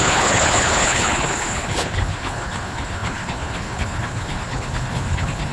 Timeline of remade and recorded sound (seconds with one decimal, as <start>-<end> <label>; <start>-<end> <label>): 0.0-5.5 remade